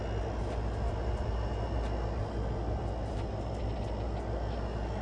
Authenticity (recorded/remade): recorded